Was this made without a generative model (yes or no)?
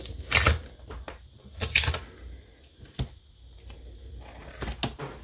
yes